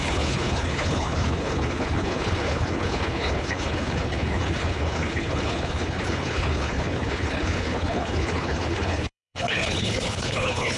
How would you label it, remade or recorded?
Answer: remade